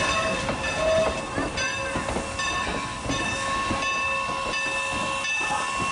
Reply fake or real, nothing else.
real